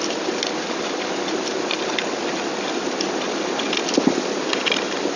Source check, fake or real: real